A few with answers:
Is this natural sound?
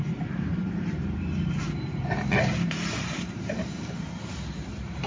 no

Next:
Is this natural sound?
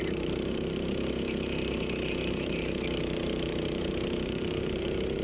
no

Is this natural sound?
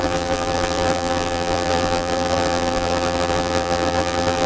no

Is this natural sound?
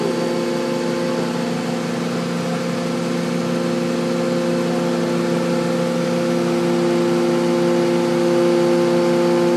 yes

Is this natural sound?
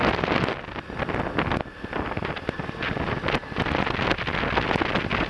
yes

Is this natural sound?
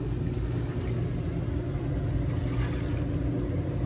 yes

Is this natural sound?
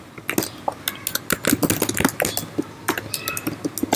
yes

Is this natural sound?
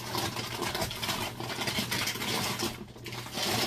yes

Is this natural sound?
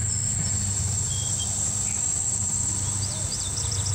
no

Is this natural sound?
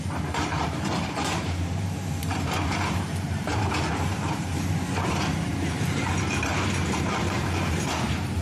no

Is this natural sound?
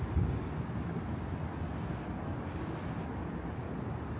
yes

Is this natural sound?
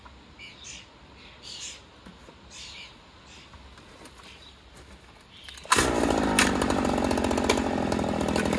yes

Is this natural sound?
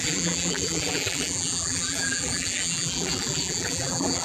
no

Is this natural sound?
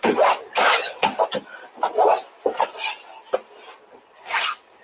yes